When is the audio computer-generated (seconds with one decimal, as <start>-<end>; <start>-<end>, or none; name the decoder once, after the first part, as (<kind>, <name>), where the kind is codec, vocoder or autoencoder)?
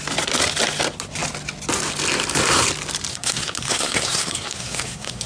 3.1-5.3 (codec, SNAC)